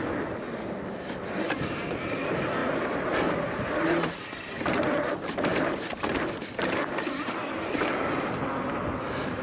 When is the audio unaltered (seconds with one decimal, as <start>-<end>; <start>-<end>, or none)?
0.0-2.6; 5.0-5.5; 6.3-9.4